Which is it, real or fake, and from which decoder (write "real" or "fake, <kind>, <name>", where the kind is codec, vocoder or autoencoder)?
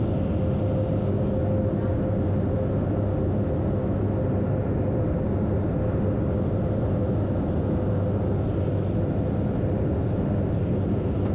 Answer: real